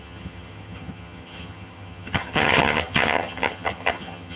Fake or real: fake